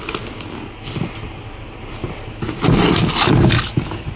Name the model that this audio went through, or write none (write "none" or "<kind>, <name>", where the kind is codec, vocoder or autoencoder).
none